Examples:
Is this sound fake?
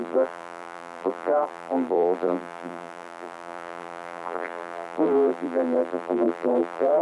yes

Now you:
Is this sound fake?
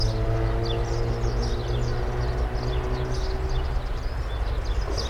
no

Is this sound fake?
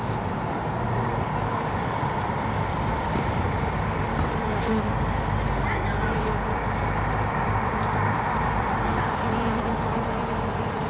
yes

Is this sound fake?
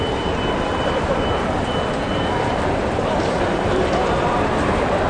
yes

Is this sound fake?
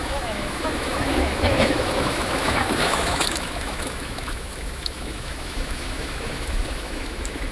yes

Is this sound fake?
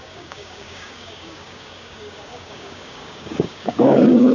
yes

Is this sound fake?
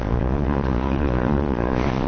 yes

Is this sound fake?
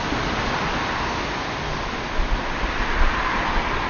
no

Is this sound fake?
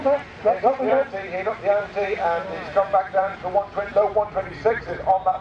yes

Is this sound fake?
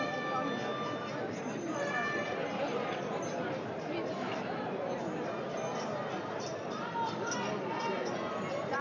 no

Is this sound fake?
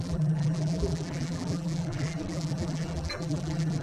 yes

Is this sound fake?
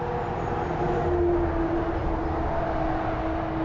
no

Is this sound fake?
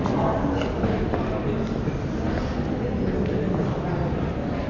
no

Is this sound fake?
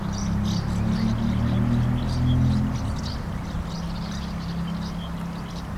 no